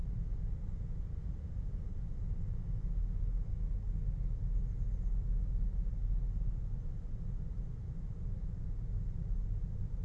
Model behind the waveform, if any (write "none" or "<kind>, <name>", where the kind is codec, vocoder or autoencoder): none